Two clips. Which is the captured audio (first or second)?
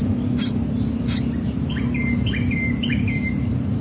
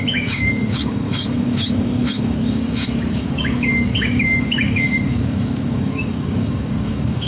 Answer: first